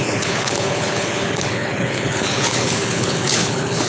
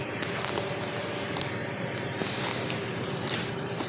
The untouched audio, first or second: second